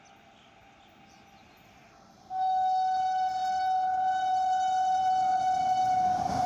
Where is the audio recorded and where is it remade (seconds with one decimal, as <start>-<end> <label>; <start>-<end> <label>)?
0.0-6.5 recorded